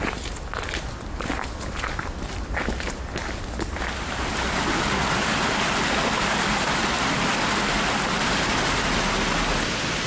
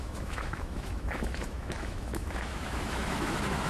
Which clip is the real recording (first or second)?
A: first